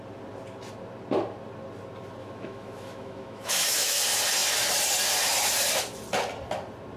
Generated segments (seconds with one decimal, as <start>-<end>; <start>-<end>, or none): 2.2-4.0